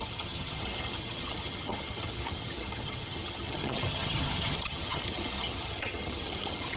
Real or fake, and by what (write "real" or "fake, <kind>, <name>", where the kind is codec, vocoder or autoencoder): fake, vocoder, HiFi-GAN